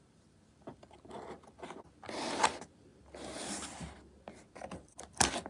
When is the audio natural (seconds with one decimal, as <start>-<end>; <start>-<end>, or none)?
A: 0.0-5.5